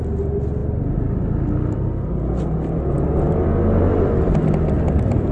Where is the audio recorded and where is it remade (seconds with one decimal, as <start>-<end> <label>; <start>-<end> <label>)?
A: 0.0-5.3 recorded